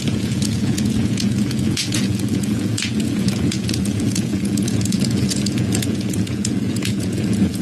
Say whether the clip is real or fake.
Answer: fake